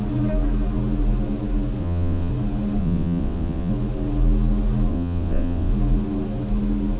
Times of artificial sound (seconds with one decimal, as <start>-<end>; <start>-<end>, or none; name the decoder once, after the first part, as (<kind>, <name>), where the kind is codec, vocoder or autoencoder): 1.8-2.3 (vocoder, WaveNeXt); 2.8-3.7; 4.9-5.7